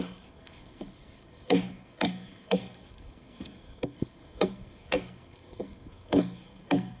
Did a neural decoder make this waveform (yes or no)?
yes